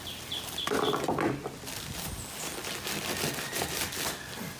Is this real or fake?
real